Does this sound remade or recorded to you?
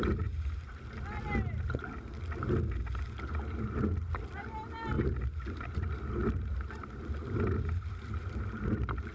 recorded